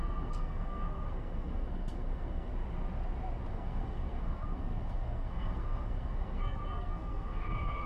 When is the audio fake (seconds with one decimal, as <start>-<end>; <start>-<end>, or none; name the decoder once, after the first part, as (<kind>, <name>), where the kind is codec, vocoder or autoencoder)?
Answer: 0.0-2.5 (codec, SNAC); 3.5-7.9